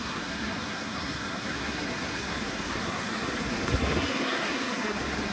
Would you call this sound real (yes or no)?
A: no